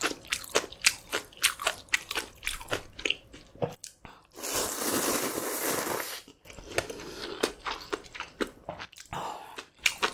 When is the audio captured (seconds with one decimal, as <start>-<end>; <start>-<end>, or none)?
0.0-9.1; 9.7-10.1